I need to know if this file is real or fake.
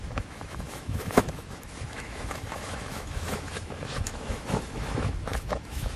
fake